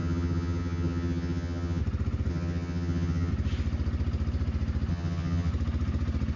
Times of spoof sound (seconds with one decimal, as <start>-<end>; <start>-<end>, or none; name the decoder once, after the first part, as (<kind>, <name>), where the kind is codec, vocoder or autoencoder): 0.0-1.8 (vocoder, HiFi-GAN); 2.3-3.3; 4.9-5.5